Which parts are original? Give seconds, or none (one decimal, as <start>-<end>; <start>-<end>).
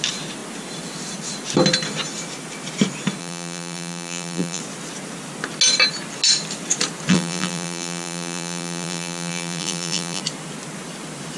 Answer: 0.0-3.2; 4.6-7.1; 10.2-11.4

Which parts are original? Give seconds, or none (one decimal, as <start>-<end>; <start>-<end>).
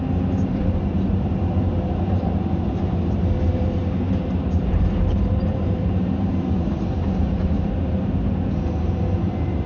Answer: none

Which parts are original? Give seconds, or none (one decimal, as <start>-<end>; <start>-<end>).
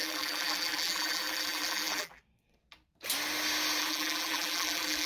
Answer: 2.2-3.8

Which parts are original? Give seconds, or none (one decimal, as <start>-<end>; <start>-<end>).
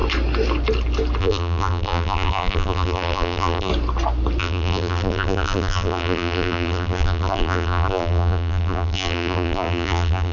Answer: 0.0-1.2; 3.7-4.4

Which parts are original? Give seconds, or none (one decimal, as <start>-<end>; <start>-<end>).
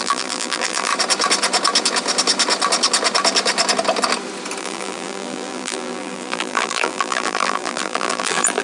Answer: 0.9-4.6